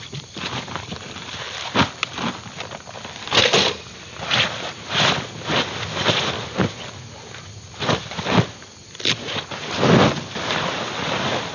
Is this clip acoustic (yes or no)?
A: yes